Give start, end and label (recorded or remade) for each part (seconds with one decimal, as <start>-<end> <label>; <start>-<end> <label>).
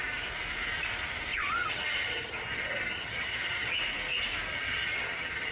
0.0-1.3 recorded; 1.3-3.7 remade; 3.7-4.5 recorded; 4.5-5.5 remade